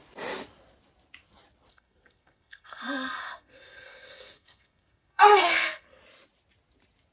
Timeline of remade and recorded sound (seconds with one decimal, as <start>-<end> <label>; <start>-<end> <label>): 0.0-1.7 recorded; 1.7-6.0 remade; 6.0-7.1 recorded